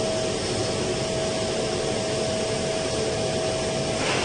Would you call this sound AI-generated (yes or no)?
no